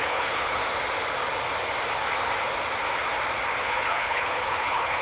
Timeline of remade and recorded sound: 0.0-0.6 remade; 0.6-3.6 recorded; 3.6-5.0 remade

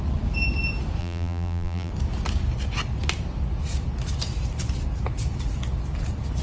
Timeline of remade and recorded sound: 0.0-1.0 recorded; 1.0-1.9 remade; 1.9-6.4 recorded

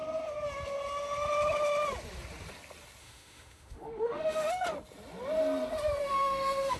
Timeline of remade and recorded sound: 0.0-3.0 recorded; 3.0-4.5 remade; 4.5-6.0 recorded; 6.0-6.8 remade